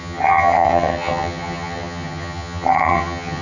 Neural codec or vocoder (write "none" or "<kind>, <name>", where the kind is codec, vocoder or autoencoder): vocoder, HiFi-GAN